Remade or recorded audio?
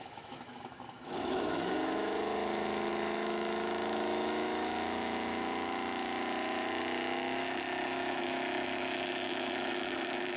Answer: remade